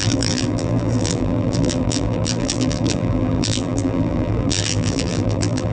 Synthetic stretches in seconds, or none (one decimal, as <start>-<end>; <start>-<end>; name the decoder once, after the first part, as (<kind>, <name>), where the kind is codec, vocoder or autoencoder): 0.0-5.7 (vocoder, BigVGAN v2)